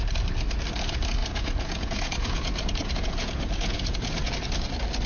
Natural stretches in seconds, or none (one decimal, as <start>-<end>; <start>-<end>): 0.0-1.2; 4.3-5.1